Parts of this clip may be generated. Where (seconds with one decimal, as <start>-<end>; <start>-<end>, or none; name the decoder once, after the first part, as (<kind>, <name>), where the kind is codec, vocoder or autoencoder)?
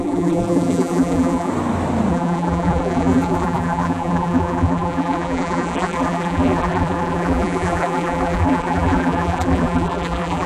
0.0-1.5 (vocoder, BigVGAN v2); 2.1-10.5